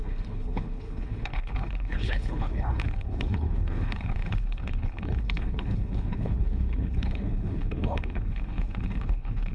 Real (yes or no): no